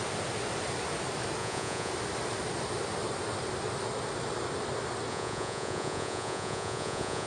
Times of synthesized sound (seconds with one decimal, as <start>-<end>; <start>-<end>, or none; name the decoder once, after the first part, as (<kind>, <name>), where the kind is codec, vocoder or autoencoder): 1.4-1.9 (vocoder, Vocos); 5.1-7.3